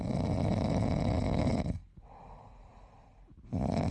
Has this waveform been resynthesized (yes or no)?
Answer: no